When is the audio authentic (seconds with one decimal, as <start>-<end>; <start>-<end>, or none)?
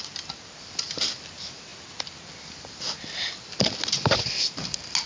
0.0-5.1